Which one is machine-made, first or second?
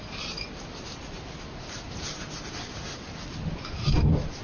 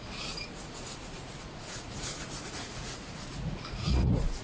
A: second